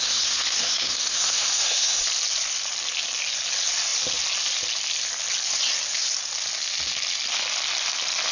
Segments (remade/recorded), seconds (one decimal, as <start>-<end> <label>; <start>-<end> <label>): 0.0-2.0 remade; 2.0-8.3 recorded